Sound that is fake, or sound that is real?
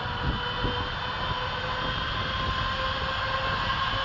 real